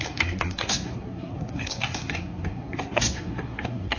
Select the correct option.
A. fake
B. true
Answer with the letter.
A